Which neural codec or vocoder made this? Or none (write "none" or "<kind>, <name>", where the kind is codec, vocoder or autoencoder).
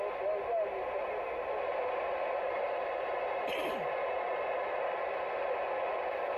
none